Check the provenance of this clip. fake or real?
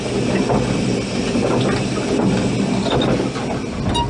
real